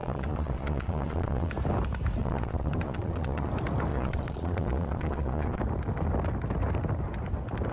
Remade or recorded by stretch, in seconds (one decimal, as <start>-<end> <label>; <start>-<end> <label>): 0.0-1.5 remade; 1.5-2.2 recorded; 2.2-3.5 remade; 3.5-3.9 recorded; 3.9-5.6 remade; 5.6-7.7 recorded